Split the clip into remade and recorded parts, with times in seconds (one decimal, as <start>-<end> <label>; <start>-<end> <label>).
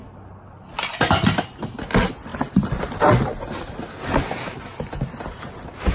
0.0-5.9 recorded